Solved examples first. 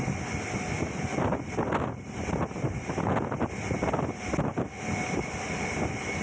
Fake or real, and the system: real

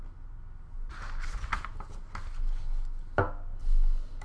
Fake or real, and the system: real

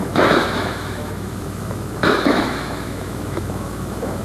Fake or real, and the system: fake, autoencoder, DAC-VAE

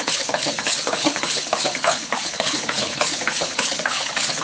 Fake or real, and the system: fake, codec, HILCodec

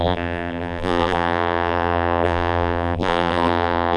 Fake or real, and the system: fake, vocoder, BigVGAN v2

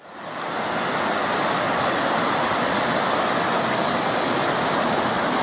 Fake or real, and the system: real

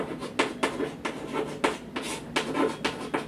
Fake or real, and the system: real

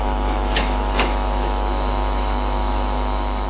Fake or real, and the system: fake, autoencoder, DAC-VAE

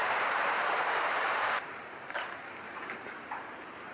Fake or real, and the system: fake, vocoder, BigVGAN v2